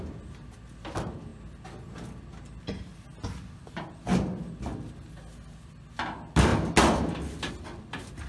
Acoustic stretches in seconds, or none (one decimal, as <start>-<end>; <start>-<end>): 0.0-8.3